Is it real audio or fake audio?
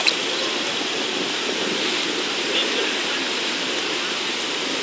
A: real